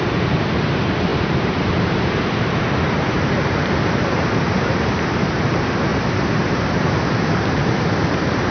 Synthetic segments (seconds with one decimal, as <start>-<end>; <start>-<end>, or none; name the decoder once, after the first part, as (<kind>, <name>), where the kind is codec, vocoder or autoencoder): 0.0-8.5 (vocoder, BigVGAN v2)

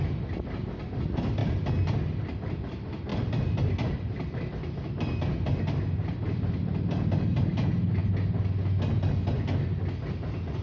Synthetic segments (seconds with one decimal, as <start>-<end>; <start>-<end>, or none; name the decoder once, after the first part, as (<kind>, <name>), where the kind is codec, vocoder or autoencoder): 3.1-4.5 (vocoder, BigVGAN v2)

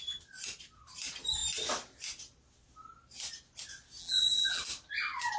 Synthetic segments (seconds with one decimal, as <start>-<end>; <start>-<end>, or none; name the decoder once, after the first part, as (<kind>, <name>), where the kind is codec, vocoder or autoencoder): 4.0-4.6 (vocoder, BigVGAN v2)

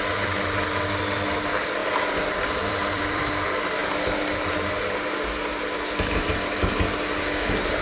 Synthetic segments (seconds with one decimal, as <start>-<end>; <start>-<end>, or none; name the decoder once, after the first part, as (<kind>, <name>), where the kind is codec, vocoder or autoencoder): 1.8-3.3 (vocoder, BigVGAN v2)

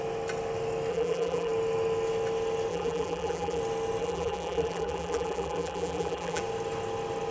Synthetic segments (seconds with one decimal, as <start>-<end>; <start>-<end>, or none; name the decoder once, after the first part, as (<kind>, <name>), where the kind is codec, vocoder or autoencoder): 0.9-1.5 (vocoder, BigVGAN v2); 2.7-3.6; 4.0-6.4

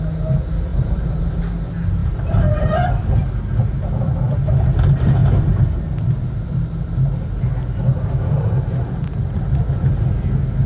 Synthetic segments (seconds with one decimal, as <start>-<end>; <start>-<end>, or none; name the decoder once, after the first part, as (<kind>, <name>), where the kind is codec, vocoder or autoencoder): 0.7-1.3 (vocoder, BigVGAN v2); 2.0-3.2; 5.2-8.5

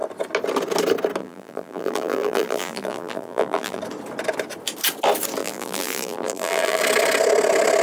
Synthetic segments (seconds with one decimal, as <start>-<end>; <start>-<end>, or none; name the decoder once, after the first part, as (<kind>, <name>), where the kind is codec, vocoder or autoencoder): 1.2-3.8 (vocoder, BigVGAN v2); 5.4-6.8